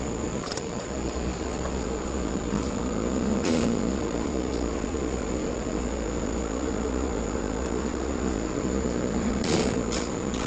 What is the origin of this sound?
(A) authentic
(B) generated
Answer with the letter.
B